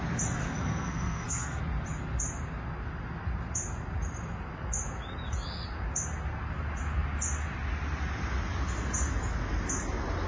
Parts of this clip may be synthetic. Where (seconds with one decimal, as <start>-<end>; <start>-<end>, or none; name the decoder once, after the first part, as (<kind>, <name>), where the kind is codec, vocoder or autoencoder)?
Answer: 0.4-1.6 (codec, SNAC)